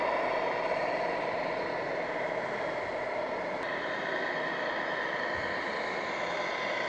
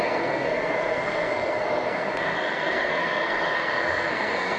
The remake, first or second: second